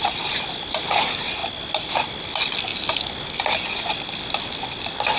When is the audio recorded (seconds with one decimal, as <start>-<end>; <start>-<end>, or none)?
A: 0.0-5.2